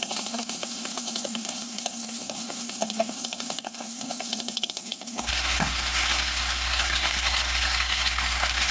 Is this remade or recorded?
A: remade